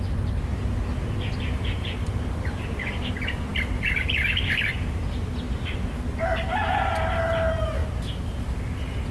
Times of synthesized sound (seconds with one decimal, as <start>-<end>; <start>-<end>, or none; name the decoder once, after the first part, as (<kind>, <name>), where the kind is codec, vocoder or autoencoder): none